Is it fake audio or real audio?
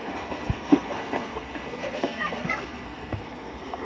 fake